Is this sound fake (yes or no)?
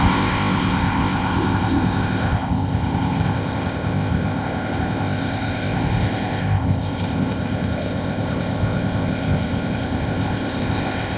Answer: yes